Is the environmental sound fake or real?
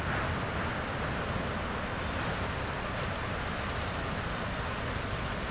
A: real